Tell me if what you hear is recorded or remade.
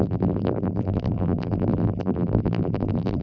remade